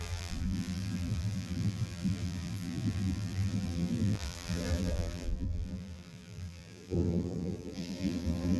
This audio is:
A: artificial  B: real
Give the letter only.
A